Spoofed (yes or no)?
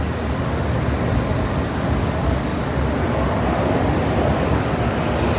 no